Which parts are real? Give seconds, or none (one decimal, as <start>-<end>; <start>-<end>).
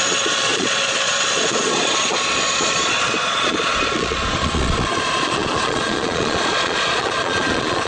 none